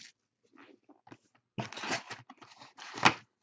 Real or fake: real